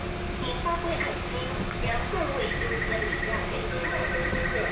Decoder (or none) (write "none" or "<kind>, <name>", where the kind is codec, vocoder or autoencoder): none